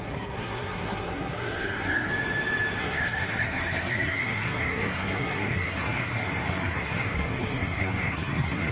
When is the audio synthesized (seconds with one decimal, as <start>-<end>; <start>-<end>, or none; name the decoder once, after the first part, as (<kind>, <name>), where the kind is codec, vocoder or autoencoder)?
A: 0.0-2.1 (codec, SNAC); 2.8-8.7